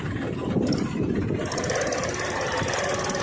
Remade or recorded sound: recorded